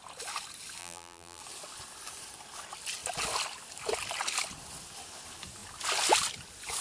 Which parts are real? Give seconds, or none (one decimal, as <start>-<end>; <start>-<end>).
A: 0.0-0.8; 1.4-6.8